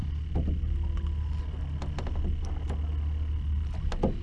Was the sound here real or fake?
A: real